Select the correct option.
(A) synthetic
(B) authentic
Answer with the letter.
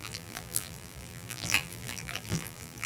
A